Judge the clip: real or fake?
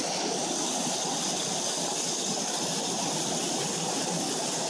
real